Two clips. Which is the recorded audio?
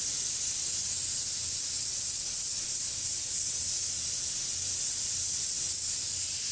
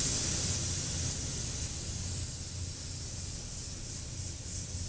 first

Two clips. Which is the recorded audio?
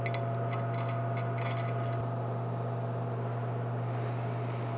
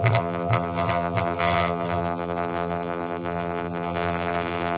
first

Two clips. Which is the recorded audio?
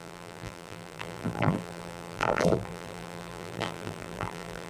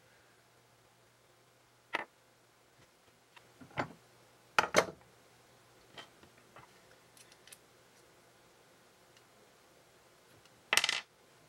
second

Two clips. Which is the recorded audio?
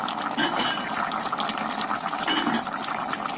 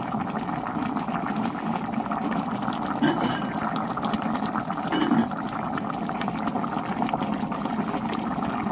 first